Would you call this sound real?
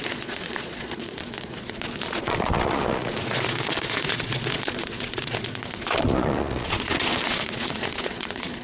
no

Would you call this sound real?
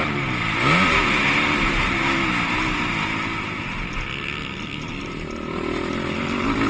yes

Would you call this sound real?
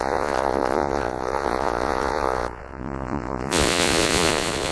no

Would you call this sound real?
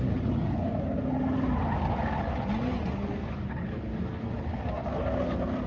yes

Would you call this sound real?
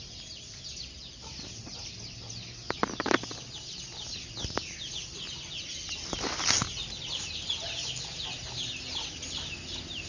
yes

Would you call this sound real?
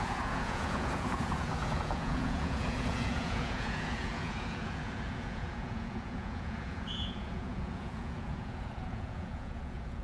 no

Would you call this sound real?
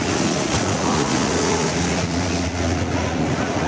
no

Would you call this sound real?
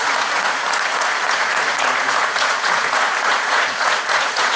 no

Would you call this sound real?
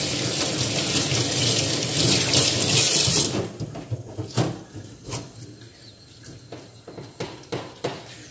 yes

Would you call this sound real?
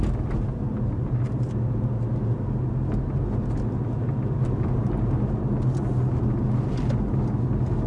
yes